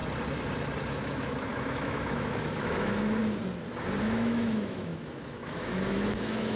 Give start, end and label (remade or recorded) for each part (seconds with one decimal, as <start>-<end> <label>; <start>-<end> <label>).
0.0-0.9 recorded; 0.9-3.2 remade; 3.2-4.0 recorded; 4.0-6.6 remade